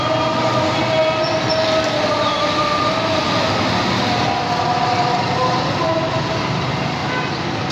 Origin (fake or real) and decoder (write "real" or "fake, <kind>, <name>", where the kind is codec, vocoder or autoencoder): real